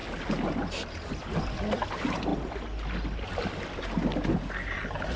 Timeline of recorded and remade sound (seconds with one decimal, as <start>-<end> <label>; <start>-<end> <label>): 0.0-5.2 recorded